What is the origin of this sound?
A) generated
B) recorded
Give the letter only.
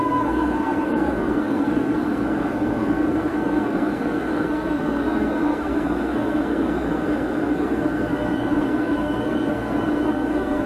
A